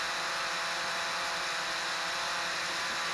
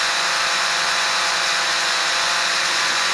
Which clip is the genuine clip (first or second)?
first